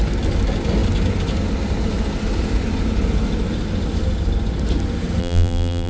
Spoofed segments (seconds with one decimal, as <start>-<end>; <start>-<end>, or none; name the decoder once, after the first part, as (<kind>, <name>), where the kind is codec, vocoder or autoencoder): 5.2-5.9 (vocoder, BigVGAN v2)